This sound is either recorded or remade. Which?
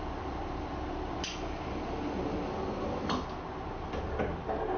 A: recorded